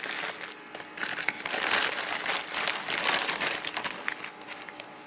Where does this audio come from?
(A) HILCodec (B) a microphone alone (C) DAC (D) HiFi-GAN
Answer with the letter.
B